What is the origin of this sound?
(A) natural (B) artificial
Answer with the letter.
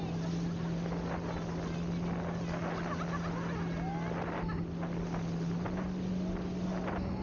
A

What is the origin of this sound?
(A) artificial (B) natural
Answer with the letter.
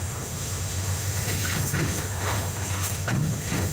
A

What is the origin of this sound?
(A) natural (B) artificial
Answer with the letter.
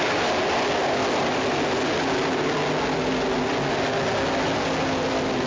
A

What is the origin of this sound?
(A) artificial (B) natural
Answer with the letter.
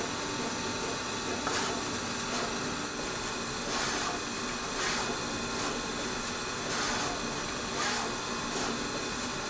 B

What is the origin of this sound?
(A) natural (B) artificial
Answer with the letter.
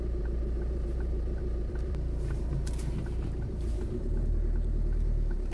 B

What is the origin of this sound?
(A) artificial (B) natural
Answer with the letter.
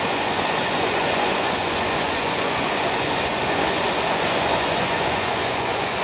A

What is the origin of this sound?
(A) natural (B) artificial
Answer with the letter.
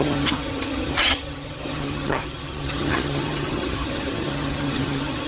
B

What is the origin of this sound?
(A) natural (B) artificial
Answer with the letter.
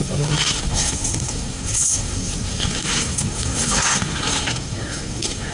B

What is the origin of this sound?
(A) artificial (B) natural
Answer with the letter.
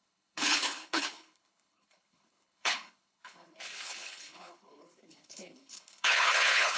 A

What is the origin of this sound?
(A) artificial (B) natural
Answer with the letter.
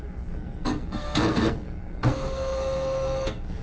A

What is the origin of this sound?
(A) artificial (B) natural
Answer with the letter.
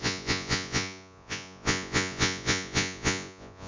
A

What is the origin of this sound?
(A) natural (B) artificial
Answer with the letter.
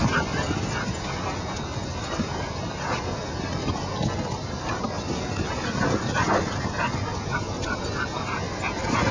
A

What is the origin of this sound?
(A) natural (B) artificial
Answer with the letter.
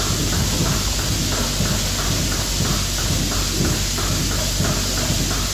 A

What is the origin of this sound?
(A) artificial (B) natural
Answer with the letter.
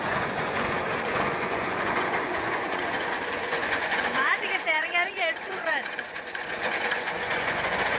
A